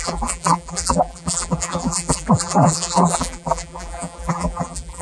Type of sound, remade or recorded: remade